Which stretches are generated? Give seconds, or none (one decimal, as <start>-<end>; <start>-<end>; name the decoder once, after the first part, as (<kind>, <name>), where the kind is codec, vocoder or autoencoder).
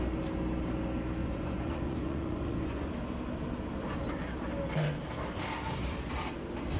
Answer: 1.2-2.9 (vocoder, Vocos)